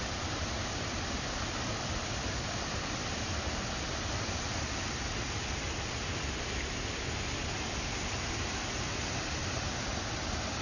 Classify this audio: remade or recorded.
recorded